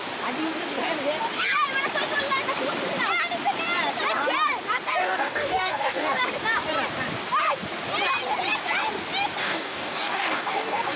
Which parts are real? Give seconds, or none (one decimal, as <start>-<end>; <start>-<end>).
0.0-5.0; 6.1-9.4